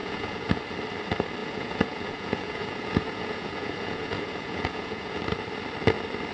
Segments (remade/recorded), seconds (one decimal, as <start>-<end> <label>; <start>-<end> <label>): 0.0-0.6 remade; 0.6-1.4 recorded; 1.4-5.2 remade; 5.2-6.3 recorded